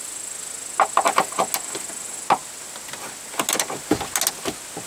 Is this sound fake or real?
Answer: real